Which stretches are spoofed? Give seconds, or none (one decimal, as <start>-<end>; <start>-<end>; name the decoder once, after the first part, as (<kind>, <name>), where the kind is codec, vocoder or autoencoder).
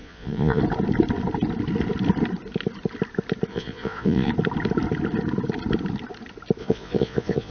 0.0-0.6 (vocoder, Vocos); 3.5-4.3; 6.6-7.5